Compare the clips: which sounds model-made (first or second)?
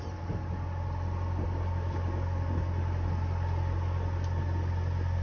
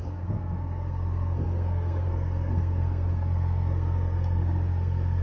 second